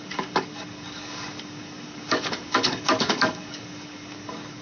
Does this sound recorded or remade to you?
remade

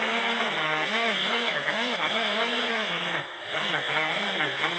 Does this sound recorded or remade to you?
remade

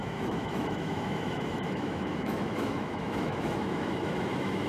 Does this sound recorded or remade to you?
remade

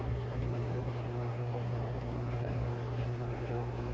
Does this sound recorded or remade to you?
remade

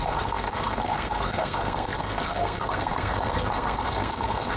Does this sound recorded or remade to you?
remade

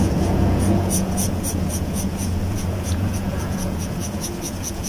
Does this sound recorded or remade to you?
remade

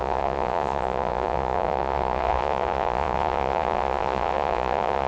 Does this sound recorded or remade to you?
remade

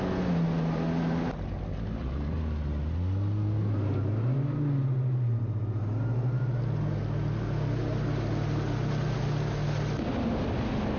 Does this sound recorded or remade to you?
recorded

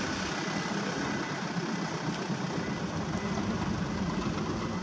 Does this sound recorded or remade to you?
recorded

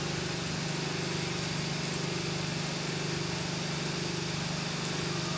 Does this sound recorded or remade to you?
recorded